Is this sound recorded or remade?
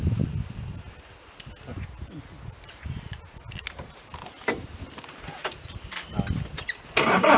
recorded